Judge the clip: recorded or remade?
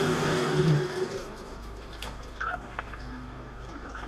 remade